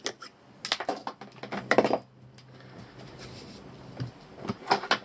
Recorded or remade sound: recorded